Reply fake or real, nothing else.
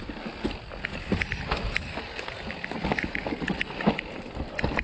real